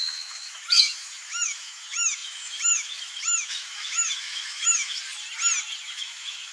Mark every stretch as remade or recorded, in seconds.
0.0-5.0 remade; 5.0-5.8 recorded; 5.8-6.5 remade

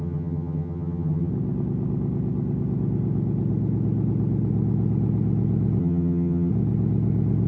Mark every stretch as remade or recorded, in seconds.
0.0-1.3 remade; 1.3-5.8 recorded; 5.8-6.5 remade; 6.5-7.5 recorded

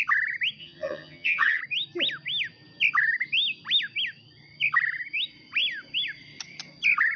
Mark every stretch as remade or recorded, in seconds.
0.0-0.6 recorded; 0.6-1.6 remade; 1.6-7.2 recorded

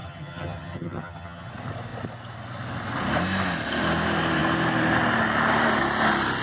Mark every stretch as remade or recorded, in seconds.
0.0-1.5 remade; 1.5-6.4 recorded

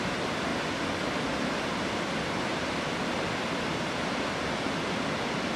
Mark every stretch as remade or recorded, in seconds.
0.0-5.6 recorded

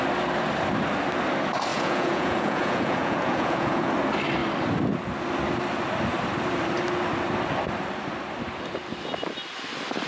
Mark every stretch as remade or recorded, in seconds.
0.0-1.7 recorded; 1.7-3.9 remade; 3.9-10.1 recorded

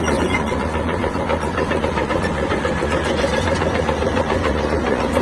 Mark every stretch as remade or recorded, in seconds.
0.0-5.2 remade